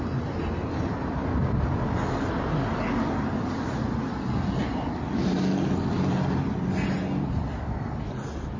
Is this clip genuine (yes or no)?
yes